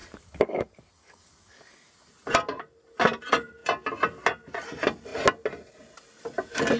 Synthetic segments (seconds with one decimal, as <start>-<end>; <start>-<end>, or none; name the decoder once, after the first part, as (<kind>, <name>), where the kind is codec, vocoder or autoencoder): 0.0-1.9 (codec, DAC)